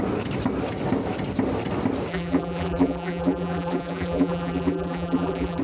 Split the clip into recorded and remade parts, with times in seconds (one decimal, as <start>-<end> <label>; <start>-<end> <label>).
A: 0.0-2.1 recorded; 2.1-5.6 remade